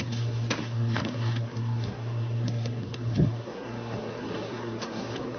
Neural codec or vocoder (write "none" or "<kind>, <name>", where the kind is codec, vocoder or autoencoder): codec, SNAC